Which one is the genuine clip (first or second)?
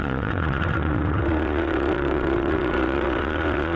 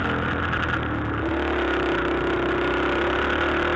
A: second